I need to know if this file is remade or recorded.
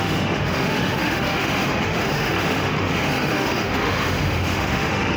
remade